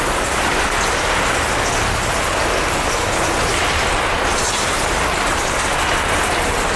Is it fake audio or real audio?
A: real